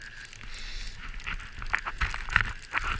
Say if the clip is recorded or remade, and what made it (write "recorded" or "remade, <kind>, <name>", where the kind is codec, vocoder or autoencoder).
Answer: recorded